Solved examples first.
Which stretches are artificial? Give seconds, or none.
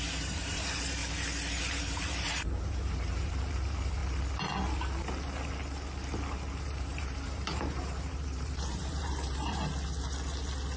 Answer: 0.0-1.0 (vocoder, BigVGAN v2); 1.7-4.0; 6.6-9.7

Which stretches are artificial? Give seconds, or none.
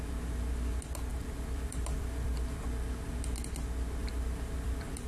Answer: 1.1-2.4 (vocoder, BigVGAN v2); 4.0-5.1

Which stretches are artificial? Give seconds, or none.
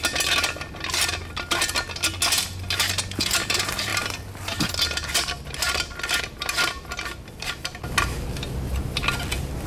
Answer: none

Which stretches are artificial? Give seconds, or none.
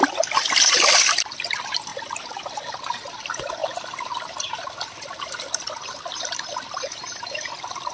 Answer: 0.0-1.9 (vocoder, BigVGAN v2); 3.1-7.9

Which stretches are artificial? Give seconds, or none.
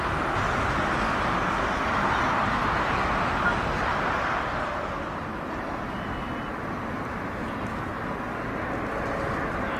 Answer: 2.6-7.3 (vocoder, BigVGAN v2)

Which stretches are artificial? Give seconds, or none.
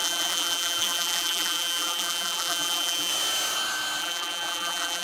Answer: 0.0-3.1 (vocoder, BigVGAN v2); 4.0-5.0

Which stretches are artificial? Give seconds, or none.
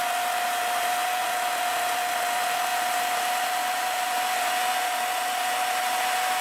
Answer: none